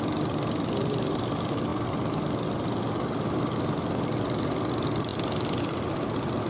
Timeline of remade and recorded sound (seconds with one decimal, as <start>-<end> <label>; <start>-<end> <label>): 0.0-6.5 recorded